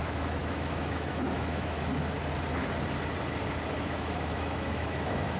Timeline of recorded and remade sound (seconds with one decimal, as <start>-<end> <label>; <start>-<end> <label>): 0.0-1.9 remade; 1.9-3.8 recorded; 3.8-5.4 remade